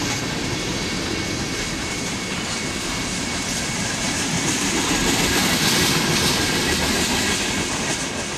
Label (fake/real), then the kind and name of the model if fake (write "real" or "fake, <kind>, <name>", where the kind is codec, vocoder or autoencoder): fake, vocoder, BigVGAN v2